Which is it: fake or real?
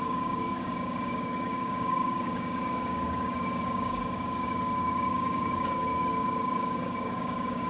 fake